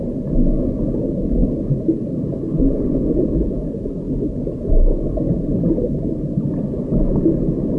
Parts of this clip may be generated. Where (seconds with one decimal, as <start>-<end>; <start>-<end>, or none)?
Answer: none